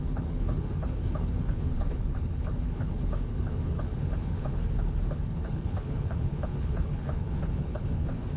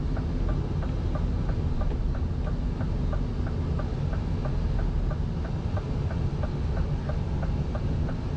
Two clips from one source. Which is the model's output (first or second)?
first